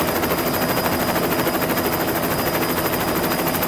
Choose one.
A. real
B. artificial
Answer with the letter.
A